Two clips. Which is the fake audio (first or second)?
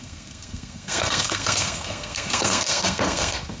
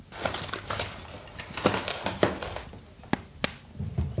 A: first